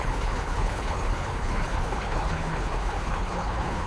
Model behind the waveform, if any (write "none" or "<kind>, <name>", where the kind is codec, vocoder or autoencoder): codec, HILCodec